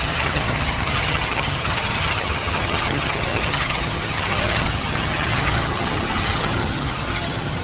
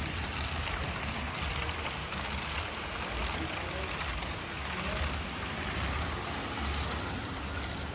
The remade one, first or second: first